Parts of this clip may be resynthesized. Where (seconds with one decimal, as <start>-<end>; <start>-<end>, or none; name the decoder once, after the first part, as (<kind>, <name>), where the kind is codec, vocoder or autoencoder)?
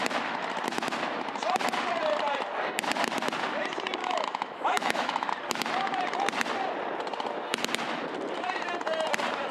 4.0-5.3 (autoencoder, DAC-VAE)